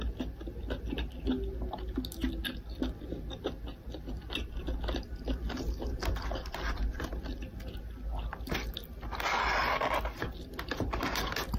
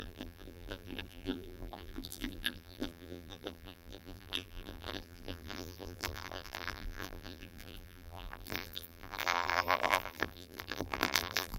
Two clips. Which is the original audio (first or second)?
first